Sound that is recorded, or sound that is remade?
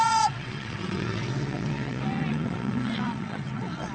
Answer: remade